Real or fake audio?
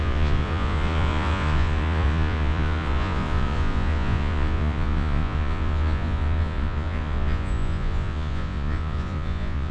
fake